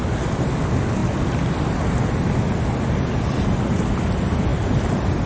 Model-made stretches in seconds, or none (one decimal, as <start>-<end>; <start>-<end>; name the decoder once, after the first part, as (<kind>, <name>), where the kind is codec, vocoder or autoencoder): none